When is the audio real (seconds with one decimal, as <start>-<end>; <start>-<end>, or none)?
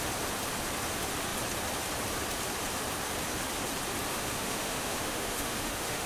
0.0-4.1